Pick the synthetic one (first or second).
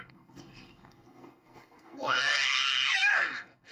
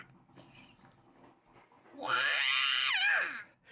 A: first